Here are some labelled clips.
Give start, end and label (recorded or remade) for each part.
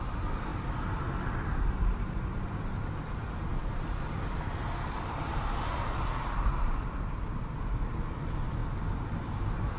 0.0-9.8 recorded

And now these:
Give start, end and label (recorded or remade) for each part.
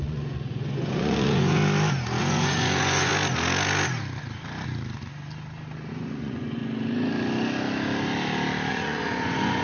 0.0-1.6 remade; 1.6-2.2 recorded; 2.2-3.1 remade; 3.1-5.9 recorded; 5.9-6.6 remade; 6.6-8.7 recorded; 8.7-9.6 remade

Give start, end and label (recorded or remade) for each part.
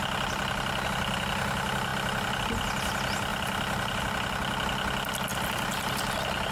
0.0-3.3 recorded; 3.3-4.0 remade; 4.0-5.3 recorded; 5.3-6.0 remade; 6.0-6.5 recorded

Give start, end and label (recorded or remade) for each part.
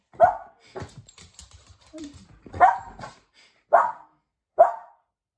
0.0-1.4 recorded; 1.4-3.6 remade; 3.6-4.7 recorded; 4.7-5.4 remade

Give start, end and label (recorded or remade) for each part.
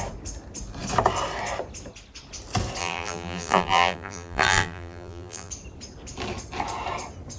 0.0-2.8 recorded; 2.8-5.5 remade; 5.5-7.4 recorded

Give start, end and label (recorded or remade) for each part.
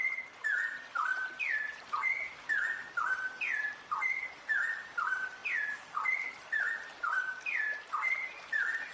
0.0-8.9 recorded